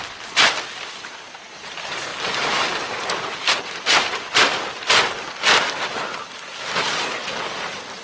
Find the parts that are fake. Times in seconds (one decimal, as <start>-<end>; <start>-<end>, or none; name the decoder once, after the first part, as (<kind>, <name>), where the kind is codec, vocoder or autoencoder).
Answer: none

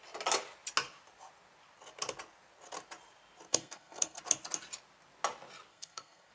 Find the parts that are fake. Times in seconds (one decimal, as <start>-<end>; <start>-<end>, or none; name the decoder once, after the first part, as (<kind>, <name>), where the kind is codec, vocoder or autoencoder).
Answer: 3.5-4.2 (codec, SNAC); 5.7-6.3

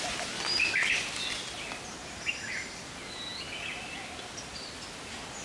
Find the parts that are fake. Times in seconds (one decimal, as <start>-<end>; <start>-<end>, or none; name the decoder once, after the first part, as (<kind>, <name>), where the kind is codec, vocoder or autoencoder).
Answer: none

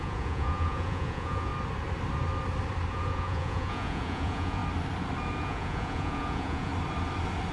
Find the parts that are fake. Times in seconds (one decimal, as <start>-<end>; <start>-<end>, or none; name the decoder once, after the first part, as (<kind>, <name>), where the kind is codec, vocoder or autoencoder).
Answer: 0.0-1.5 (vocoder, Vocos); 2.9-4.6; 5.4-6.7

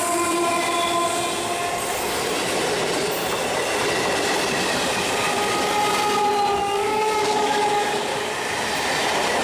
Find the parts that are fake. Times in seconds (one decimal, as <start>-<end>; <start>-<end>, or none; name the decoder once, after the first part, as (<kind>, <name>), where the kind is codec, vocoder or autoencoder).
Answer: 6.6-8.3 (codec, DAC)

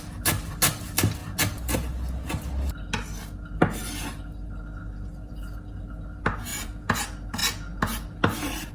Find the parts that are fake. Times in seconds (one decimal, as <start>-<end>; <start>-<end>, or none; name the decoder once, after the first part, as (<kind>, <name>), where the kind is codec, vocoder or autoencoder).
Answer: 6.5-7.0 (vocoder, Vocos)